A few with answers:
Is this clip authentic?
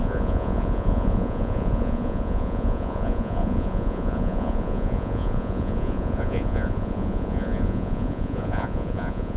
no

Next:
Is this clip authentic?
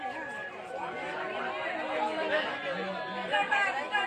yes